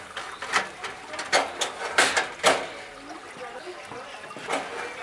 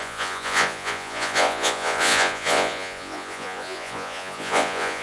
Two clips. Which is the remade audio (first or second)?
second